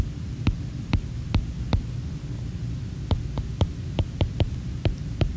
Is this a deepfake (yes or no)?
no